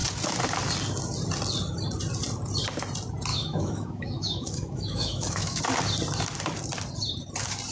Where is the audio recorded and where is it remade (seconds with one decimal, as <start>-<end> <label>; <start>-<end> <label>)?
0.0-3.3 recorded; 3.3-5.6 remade; 5.6-7.7 recorded